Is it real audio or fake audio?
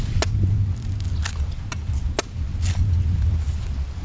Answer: real